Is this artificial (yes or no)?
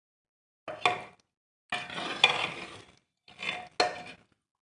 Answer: no